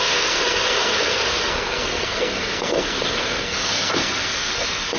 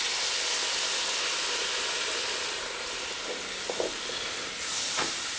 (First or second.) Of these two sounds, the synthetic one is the first